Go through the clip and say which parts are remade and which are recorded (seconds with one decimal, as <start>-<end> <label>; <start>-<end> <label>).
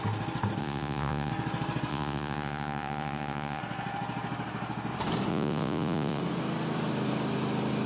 0.0-0.6 recorded; 0.6-1.3 remade; 1.3-1.9 recorded; 1.9-3.6 remade; 3.6-5.3 recorded; 5.3-6.2 remade; 6.2-7.9 recorded